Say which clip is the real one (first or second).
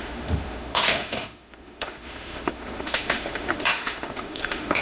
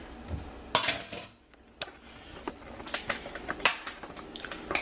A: second